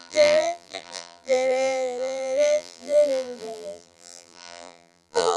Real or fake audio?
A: fake